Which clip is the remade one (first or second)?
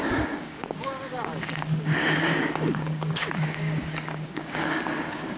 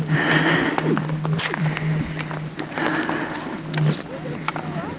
first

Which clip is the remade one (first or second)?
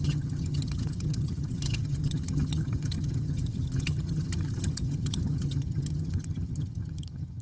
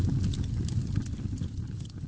first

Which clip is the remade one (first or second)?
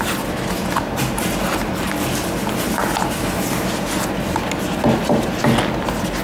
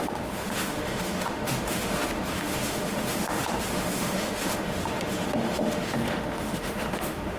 second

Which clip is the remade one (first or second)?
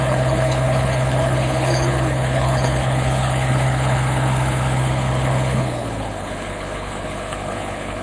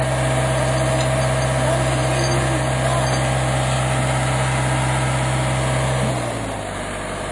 first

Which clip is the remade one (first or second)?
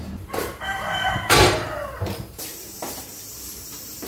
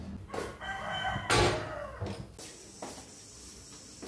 first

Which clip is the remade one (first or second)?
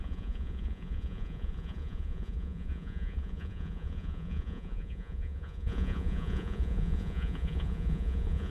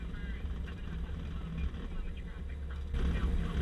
first